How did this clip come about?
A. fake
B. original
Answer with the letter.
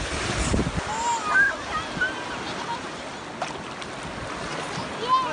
B